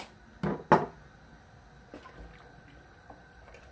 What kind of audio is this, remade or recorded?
recorded